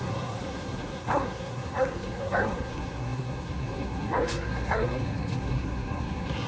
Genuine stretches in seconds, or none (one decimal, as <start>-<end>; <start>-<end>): none